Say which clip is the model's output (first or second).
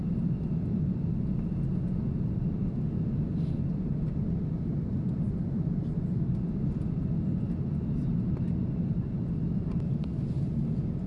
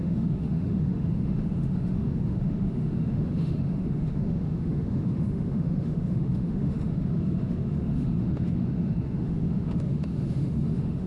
second